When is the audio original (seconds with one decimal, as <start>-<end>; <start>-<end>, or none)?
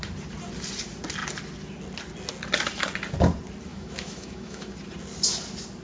0.0-3.7; 4.7-5.8